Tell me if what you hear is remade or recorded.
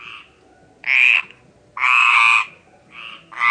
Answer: recorded